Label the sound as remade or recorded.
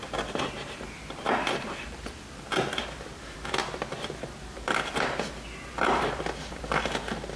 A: remade